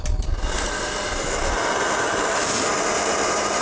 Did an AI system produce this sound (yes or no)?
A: no